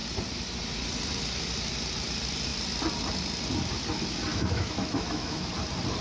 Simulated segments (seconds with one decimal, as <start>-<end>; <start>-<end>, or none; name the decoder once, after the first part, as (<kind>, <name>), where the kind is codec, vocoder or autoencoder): 4.3-5.5 (autoencoder, DAC-VAE)